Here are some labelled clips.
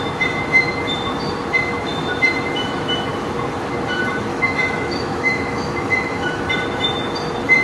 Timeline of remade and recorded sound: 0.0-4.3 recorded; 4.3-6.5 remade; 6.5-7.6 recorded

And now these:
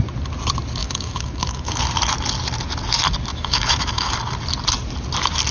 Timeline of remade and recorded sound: 0.0-0.8 recorded; 0.8-1.8 remade; 1.8-3.3 recorded; 3.3-4.1 remade; 4.1-5.5 recorded

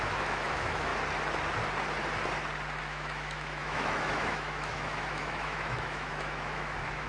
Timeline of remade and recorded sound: 0.0-0.9 remade; 0.9-2.8 recorded; 2.8-7.1 remade

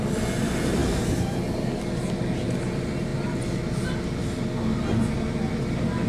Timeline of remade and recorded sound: 0.0-6.1 recorded